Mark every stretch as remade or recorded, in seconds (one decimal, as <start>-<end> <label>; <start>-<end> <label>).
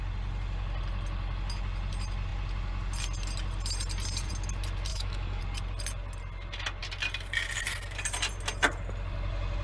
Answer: 0.0-4.9 recorded; 4.9-5.4 remade; 5.4-9.6 recorded